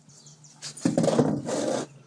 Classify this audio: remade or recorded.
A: recorded